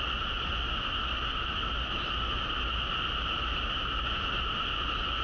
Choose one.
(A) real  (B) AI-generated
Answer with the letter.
A